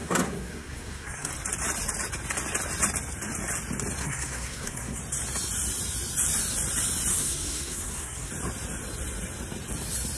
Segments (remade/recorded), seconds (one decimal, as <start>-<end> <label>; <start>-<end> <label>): 0.0-1.3 remade; 1.3-4.0 recorded; 4.0-5.0 remade; 5.0-7.1 recorded; 7.1-8.3 remade; 8.3-10.2 recorded